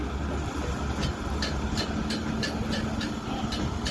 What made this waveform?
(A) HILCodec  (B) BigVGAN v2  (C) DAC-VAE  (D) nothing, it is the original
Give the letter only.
D